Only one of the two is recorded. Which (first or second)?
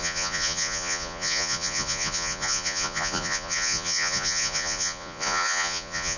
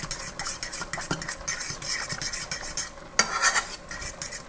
second